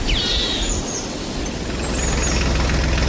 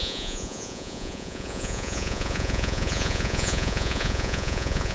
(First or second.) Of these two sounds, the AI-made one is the second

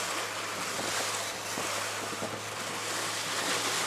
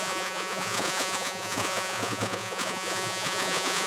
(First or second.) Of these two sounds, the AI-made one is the second